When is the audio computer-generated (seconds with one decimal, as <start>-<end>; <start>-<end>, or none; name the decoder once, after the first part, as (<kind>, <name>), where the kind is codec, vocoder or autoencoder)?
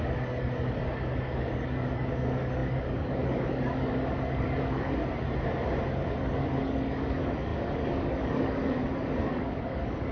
0.0-5.0 (codec, DAC); 6.1-10.1